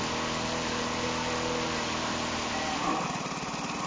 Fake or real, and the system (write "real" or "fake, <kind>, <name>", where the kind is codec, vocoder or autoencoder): real